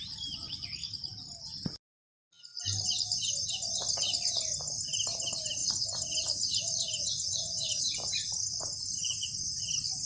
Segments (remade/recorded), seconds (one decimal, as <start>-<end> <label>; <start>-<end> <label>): 0.0-5.6 recorded; 5.6-7.8 remade; 7.8-9.0 recorded; 9.0-9.7 remade; 9.7-10.1 recorded